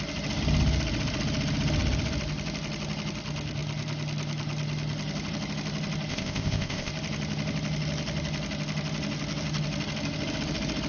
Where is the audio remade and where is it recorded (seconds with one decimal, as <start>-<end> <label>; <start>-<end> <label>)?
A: 0.0-6.1 recorded; 6.1-6.9 remade; 6.9-10.9 recorded